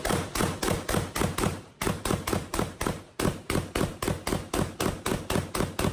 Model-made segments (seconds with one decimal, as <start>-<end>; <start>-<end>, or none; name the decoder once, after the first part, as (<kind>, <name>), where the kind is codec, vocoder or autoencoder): 1.5-4.0 (vocoder, BigVGAN v2)